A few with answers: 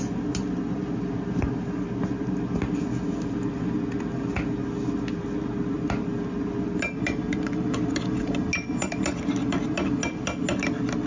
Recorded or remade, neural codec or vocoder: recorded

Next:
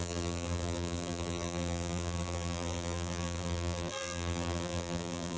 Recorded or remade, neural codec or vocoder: remade, vocoder, BigVGAN v2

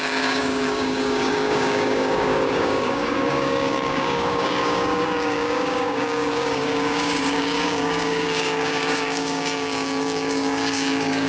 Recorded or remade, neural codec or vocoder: remade, codec, DAC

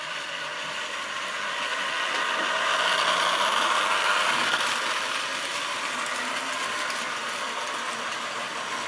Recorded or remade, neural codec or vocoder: remade, vocoder, BigVGAN v2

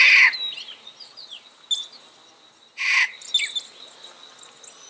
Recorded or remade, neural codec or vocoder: recorded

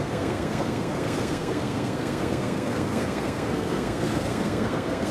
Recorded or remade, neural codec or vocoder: remade, codec, SNAC